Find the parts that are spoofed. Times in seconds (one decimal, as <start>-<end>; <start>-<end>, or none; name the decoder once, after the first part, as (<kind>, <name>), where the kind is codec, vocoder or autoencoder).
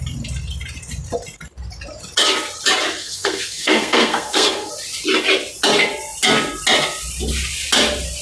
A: 3.0-4.7 (codec, SNAC)